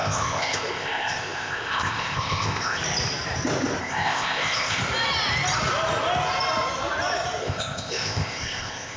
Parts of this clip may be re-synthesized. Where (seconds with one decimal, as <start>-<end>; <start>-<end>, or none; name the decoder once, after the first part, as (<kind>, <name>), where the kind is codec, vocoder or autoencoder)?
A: 0.0-2.8 (codec, ZipCodec); 3.8-4.8; 7.4-9.0